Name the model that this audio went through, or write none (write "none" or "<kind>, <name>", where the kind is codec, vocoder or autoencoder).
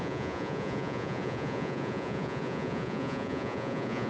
vocoder, Vocos